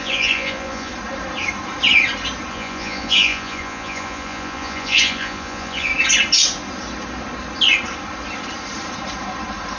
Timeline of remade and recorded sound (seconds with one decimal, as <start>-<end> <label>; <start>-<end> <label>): 0.0-0.9 remade; 0.9-2.5 recorded; 2.5-5.9 remade; 5.9-9.8 recorded